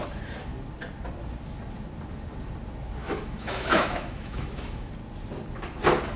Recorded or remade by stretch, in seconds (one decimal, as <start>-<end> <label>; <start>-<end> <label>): 0.0-3.0 recorded; 3.0-4.9 remade; 4.9-6.2 recorded